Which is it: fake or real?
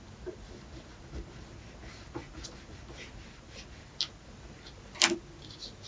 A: real